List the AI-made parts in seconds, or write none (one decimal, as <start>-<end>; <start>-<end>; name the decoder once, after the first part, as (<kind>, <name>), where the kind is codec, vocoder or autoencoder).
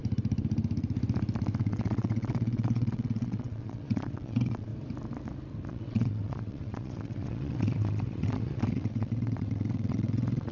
1.6-4.7 (vocoder, WaveNeXt); 5.7-10.5